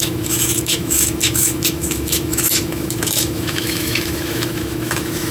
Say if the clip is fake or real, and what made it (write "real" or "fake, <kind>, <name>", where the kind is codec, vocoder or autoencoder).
fake, autoencoder, DAC-VAE